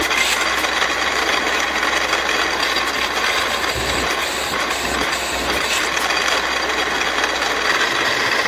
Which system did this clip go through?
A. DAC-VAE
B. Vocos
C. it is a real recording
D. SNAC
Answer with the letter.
C